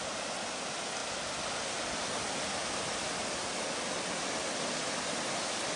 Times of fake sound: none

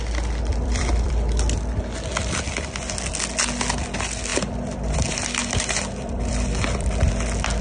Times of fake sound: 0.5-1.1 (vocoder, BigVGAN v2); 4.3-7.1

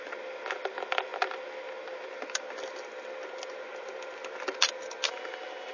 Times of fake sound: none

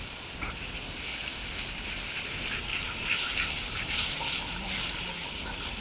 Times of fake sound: 2.7-4.2 (vocoder, BigVGAN v2)

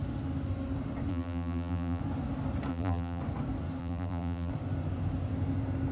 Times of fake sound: 1.1-2.0 (vocoder, BigVGAN v2); 2.7-3.2; 3.8-4.5

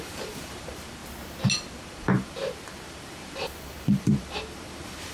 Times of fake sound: 0.0-1.0 (vocoder, BigVGAN v2); 1.8-5.1

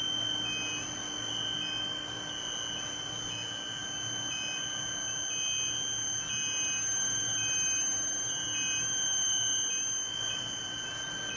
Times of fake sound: none

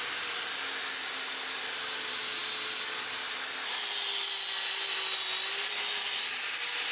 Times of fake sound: none